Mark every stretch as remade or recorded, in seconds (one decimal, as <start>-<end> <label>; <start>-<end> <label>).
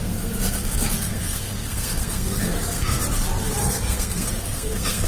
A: 0.0-3.0 remade; 3.0-3.6 recorded; 3.6-5.1 remade